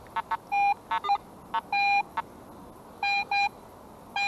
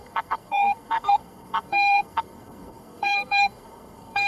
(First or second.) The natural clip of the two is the first